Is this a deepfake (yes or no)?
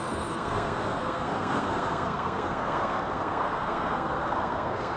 yes